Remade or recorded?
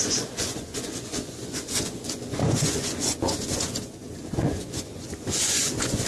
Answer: remade